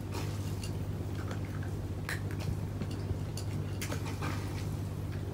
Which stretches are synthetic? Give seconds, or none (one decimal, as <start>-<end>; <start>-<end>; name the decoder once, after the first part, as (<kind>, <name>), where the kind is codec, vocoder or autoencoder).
none